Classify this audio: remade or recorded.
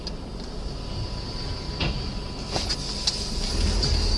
recorded